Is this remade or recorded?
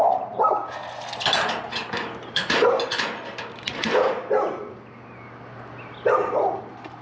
recorded